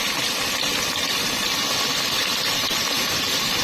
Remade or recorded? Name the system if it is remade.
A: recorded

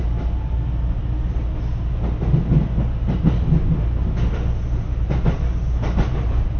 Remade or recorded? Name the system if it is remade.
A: recorded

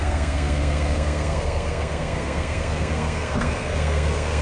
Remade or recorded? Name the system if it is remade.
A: remade, codec, SNAC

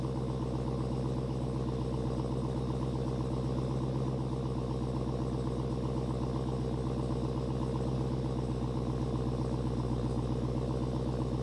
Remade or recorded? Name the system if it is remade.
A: recorded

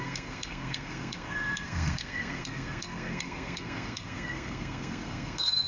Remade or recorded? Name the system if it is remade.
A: remade, codec, SNAC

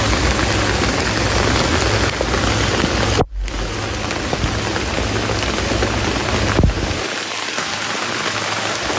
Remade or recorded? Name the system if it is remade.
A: recorded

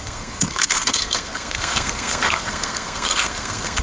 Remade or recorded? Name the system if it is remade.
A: remade, codec, SNAC